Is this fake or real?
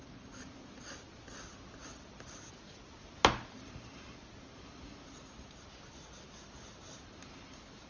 real